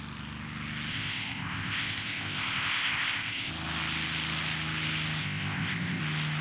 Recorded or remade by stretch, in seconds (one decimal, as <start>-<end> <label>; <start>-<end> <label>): 0.0-0.9 recorded; 0.9-3.5 remade; 3.5-5.2 recorded; 5.2-6.0 remade; 6.0-6.4 recorded

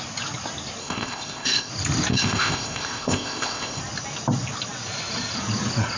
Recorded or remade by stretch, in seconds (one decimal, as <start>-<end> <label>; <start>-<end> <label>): 0.0-0.8 recorded; 0.8-1.7 remade; 1.7-2.1 recorded; 2.1-3.8 remade; 3.8-6.0 recorded

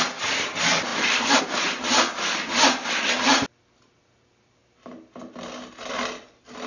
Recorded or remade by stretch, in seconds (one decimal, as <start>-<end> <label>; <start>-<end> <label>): 0.0-6.7 recorded

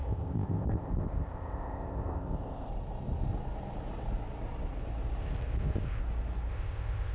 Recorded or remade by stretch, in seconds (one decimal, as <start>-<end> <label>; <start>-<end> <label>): 0.0-2.7 remade; 2.7-5.2 recorded; 5.2-6.0 remade; 6.0-6.5 recorded; 6.5-7.1 remade

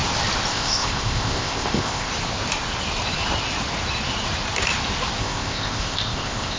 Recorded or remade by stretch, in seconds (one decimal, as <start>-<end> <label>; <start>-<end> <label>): 0.0-0.5 recorded; 0.5-2.1 remade; 2.1-5.2 recorded; 5.2-6.6 remade

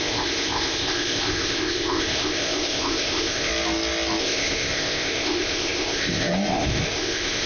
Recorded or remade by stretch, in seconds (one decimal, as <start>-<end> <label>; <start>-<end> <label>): 0.0-3.5 remade; 3.5-4.2 recorded; 4.2-7.5 remade

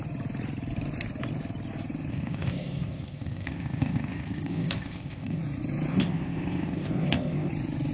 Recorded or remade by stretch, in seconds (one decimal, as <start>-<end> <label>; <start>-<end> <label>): 0.0-2.1 recorded; 2.1-5.4 remade; 5.4-5.9 recorded; 5.9-7.5 remade; 7.5-7.9 recorded